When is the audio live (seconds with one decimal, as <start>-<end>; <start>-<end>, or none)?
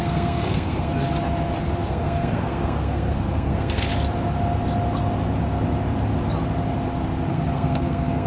0.9-1.9; 3.9-7.3